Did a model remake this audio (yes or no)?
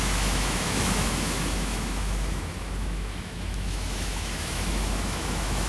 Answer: yes